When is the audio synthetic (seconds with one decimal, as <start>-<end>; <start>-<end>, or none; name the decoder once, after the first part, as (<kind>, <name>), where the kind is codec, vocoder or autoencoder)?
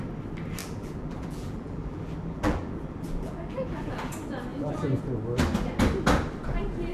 0.6-4.1 (vocoder, BigVGAN v2); 4.5-5.0